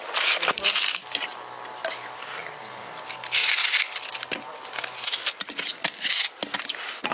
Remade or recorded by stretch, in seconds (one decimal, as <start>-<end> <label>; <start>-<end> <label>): 0.0-7.1 recorded